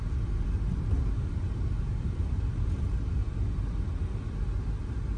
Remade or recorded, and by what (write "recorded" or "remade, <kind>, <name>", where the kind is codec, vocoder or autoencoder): recorded